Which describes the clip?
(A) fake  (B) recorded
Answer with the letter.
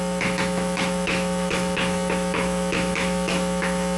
A